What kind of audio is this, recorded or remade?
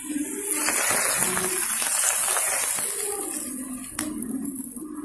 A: recorded